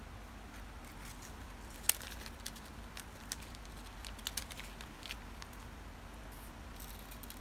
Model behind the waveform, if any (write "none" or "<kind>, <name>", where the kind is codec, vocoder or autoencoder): none